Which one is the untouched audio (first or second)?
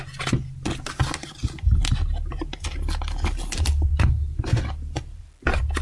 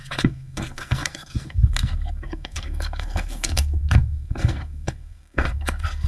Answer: first